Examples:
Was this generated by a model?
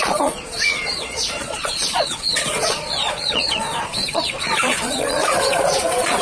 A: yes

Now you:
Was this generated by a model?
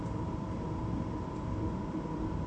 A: yes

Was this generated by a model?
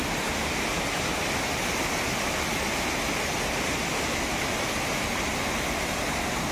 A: no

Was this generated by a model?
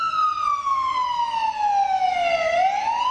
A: no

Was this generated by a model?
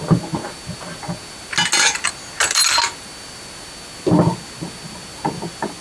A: no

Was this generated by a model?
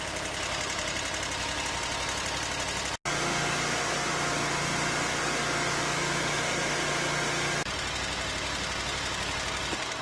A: no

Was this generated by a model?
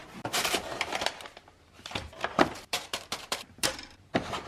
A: yes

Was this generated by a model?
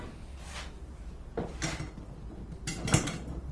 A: no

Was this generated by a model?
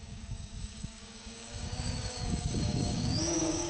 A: yes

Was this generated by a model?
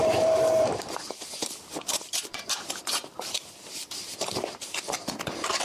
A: yes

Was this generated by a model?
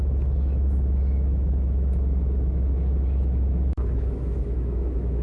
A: yes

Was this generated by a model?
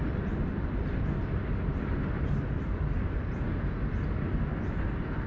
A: no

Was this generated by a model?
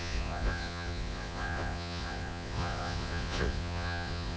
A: yes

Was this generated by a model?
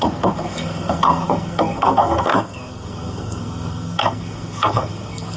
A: yes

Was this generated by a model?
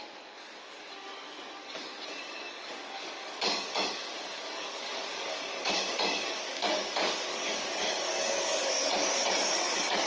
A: yes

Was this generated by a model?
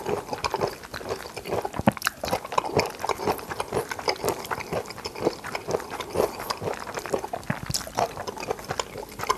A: no